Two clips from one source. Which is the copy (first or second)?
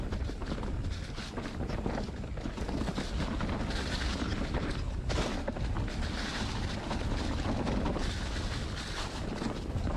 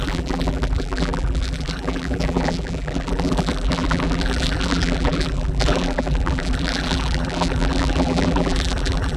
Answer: second